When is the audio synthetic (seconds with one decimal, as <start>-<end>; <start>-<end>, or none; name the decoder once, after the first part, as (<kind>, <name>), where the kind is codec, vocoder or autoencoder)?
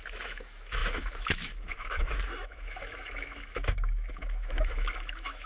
0.0-5.5 (autoencoder, DAC-VAE)